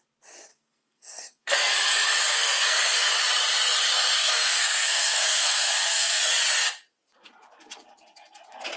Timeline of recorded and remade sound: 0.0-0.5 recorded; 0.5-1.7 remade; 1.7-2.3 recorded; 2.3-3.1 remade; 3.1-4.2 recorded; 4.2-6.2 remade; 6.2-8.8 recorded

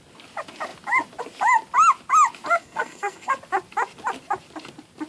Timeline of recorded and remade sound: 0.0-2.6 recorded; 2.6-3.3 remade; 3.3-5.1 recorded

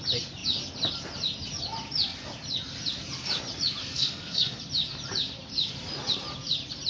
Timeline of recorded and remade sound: 0.0-3.8 recorded; 3.8-4.6 remade; 4.6-6.9 recorded